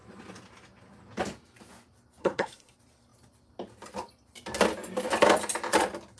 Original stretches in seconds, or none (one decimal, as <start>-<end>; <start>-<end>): 0.0-2.2; 2.7-6.2